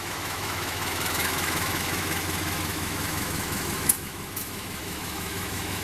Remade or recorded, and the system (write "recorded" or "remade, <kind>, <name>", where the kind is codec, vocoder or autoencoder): remade, autoencoder, DAC-VAE